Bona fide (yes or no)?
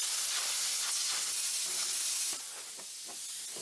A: yes